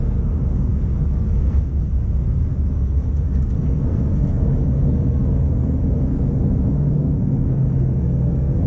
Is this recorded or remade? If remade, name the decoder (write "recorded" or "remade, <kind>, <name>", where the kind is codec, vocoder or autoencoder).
remade, codec, SNAC